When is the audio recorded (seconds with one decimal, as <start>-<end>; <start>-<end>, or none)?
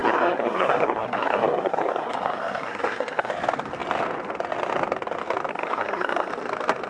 3.3-5.5; 6.3-6.9